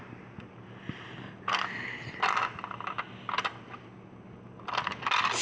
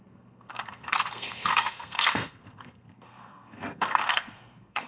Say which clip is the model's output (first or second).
second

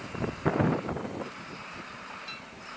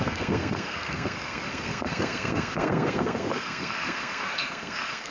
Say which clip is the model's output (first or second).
second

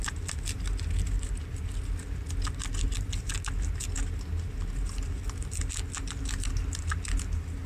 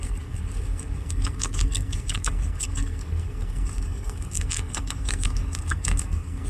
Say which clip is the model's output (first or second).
second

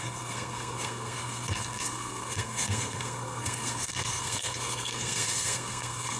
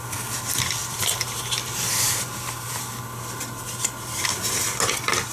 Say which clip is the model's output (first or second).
first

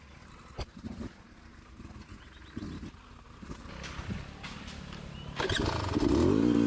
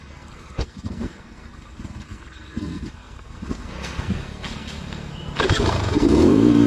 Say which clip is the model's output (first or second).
second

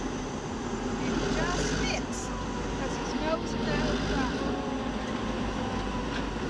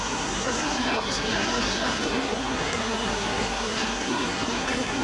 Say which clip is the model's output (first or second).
second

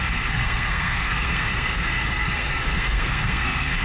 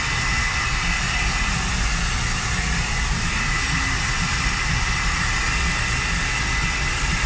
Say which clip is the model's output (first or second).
first